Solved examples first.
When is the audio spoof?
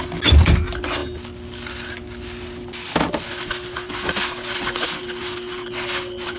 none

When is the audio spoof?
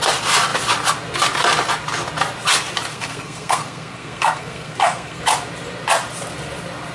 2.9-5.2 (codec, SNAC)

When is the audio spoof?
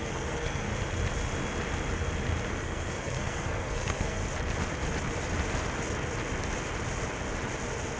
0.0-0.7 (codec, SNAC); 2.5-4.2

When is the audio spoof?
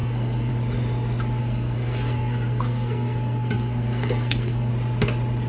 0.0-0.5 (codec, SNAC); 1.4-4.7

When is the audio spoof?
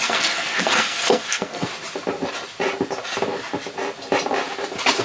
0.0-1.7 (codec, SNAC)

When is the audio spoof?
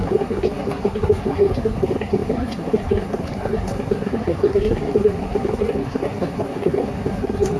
0.0-7.6 (codec, SNAC)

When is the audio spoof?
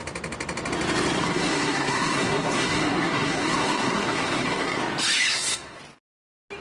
1.2-4.8 (codec, SNAC); 5.3-5.8